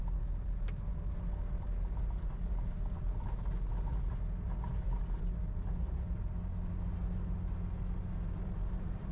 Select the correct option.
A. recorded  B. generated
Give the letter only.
A